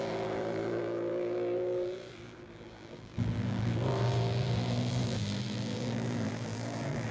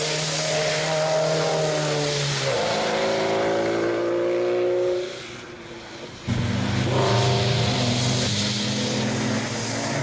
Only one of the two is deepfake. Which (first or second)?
first